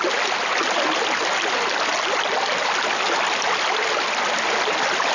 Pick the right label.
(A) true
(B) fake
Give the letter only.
A